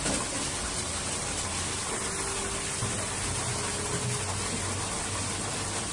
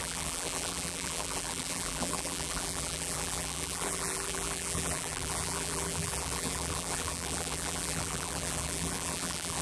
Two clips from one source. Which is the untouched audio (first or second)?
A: first